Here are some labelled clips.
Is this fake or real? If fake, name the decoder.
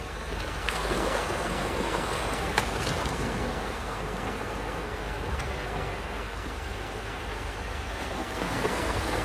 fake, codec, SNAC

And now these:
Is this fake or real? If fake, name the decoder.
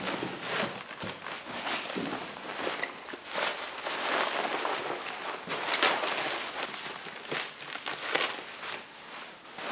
real